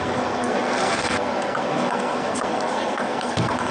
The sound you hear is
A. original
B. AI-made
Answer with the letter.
B